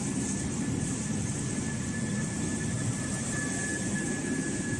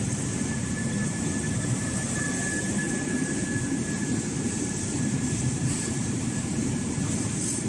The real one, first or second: first